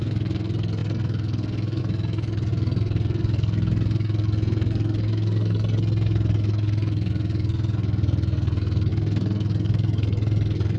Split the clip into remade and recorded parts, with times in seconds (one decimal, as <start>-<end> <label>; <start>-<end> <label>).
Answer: 0.0-10.8 remade